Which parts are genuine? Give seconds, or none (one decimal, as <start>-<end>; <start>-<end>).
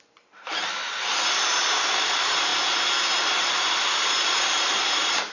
0.8-1.9; 2.5-3.4